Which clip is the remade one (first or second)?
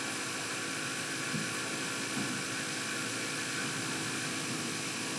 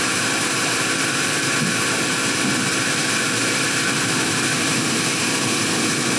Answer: second